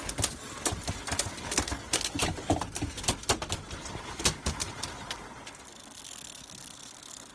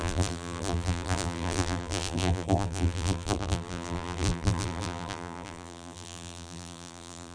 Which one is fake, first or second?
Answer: second